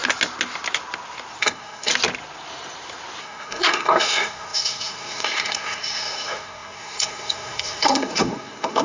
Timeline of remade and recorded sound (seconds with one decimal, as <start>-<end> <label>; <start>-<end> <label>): 0.0-1.4 recorded; 1.4-1.9 remade; 1.9-3.2 recorded; 3.2-8.8 remade